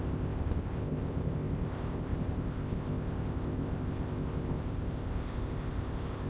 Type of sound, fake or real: fake